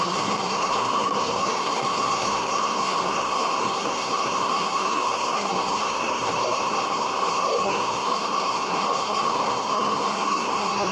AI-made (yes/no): yes